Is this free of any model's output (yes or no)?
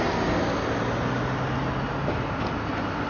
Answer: yes